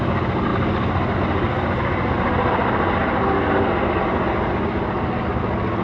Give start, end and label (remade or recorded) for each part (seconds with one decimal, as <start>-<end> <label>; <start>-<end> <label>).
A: 0.0-5.8 recorded